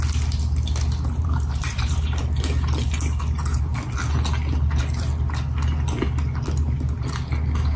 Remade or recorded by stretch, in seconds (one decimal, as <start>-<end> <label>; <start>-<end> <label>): 0.0-1.2 recorded; 1.2-2.2 remade; 2.2-7.8 recorded